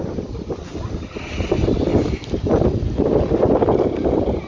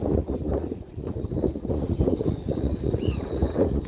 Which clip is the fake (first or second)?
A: second